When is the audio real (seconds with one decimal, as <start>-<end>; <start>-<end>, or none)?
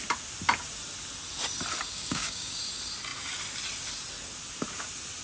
0.0-1.9; 2.6-5.2